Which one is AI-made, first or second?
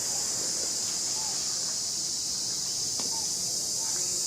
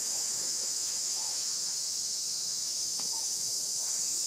second